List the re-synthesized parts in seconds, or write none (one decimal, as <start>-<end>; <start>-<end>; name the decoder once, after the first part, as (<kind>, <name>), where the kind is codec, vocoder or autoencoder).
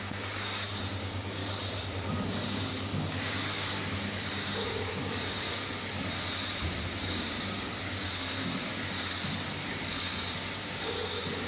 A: 0.0-1.4 (codec, DAC); 2.1-5.5; 6.8-8.7; 9.9-11.5